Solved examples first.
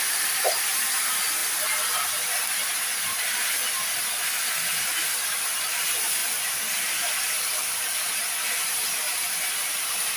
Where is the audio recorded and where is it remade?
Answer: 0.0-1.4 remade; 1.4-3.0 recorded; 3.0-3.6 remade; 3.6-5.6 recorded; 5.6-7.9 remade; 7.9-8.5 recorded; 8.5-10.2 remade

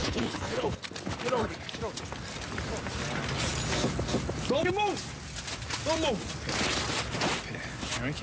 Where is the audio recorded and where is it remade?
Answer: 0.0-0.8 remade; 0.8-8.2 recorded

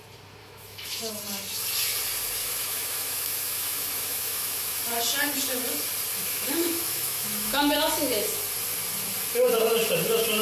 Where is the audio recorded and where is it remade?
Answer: 0.0-0.4 recorded; 0.4-1.1 remade; 1.1-2.4 recorded; 2.4-4.8 remade; 4.8-6.1 recorded; 6.1-7.8 remade; 7.8-10.4 recorded